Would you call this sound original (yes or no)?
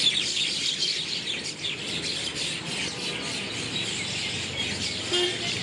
yes